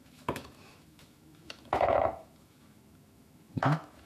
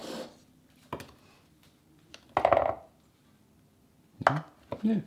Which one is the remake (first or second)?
first